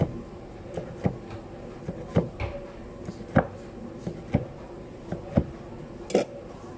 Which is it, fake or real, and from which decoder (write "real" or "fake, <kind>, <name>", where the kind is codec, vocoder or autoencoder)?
real